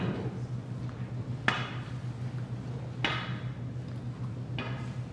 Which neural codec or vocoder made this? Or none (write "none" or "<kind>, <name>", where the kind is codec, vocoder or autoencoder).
none